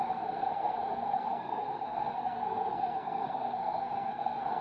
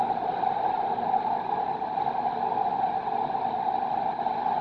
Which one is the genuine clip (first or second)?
second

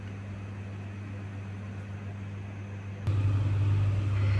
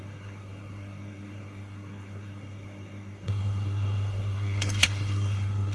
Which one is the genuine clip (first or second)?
first